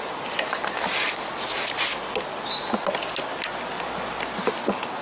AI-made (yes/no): no